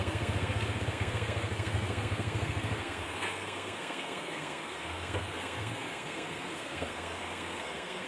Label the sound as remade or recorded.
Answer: remade